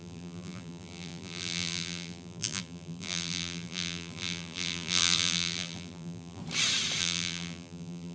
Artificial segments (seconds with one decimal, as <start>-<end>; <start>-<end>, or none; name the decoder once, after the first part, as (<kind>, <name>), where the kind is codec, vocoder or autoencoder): 0.0-6.4 (vocoder, BigVGAN v2); 7.0-8.1